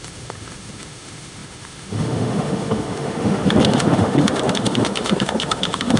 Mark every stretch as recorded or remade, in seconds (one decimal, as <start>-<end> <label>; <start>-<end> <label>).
0.0-6.0 remade